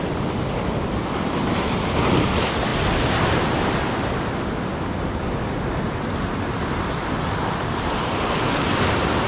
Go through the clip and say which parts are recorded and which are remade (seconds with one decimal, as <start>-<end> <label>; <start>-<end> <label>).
0.0-9.3 recorded